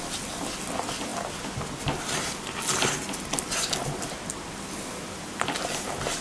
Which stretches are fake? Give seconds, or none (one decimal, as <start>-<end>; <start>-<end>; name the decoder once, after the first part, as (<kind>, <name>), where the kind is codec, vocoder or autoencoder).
none